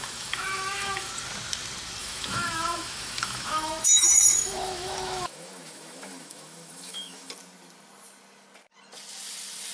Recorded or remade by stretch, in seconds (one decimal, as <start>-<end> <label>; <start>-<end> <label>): 0.0-1.1 remade; 1.1-2.0 recorded; 2.0-7.3 remade; 7.3-9.7 recorded

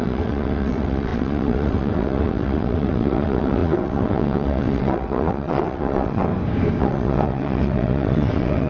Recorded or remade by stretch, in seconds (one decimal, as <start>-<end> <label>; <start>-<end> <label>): 0.0-6.3 remade; 6.3-6.8 recorded; 6.8-8.7 remade

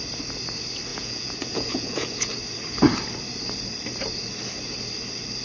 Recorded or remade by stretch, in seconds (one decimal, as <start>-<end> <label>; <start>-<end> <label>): 0.0-0.9 recorded; 0.9-2.3 remade; 2.3-5.4 recorded

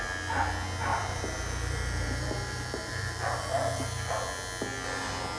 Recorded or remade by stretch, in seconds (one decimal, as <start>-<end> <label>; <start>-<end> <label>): 0.0-0.9 recorded; 0.9-4.1 remade; 4.1-5.4 recorded